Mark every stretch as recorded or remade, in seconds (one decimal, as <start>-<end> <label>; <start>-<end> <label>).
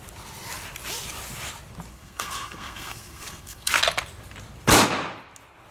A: 0.0-1.9 recorded; 1.9-3.7 remade; 3.7-5.7 recorded